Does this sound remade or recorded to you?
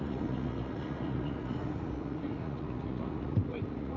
remade